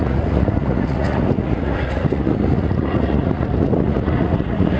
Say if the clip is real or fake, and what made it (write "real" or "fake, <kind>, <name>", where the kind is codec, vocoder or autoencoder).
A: fake, vocoder, Vocos